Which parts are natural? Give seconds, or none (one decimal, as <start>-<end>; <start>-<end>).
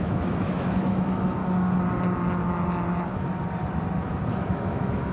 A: 1.4-4.5